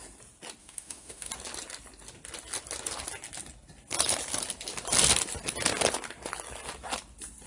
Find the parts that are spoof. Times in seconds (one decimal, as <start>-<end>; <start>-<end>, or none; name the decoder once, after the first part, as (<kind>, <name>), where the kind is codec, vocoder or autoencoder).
0.6-1.3 (autoencoder, DAC-VAE)